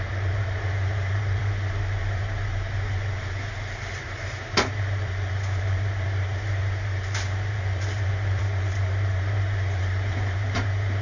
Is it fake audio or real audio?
fake